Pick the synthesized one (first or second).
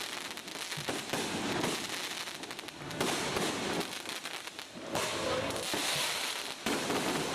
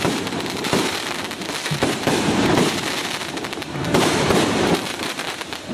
second